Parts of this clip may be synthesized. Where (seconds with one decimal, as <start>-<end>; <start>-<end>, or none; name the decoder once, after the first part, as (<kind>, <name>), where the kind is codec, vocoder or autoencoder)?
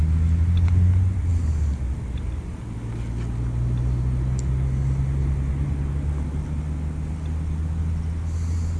none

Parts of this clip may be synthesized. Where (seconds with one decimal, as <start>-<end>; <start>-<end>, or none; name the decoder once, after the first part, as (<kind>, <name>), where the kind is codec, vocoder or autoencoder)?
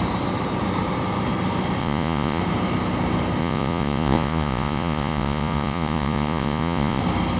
1.8-2.4 (vocoder, Vocos); 3.4-7.0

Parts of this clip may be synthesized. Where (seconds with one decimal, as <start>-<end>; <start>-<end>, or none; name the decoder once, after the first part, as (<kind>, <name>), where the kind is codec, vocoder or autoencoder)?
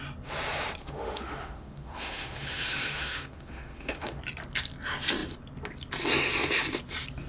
0.8-4.2 (autoencoder, DAC-VAE)